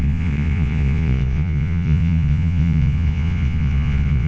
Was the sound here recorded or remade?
remade